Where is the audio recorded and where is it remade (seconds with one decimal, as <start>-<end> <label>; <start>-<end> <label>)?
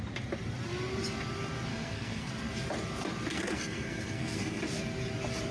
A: 0.0-1.7 recorded; 1.7-2.3 remade; 2.3-3.3 recorded; 3.3-4.6 remade; 4.6-5.5 recorded